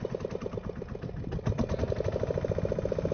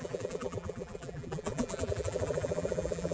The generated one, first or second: second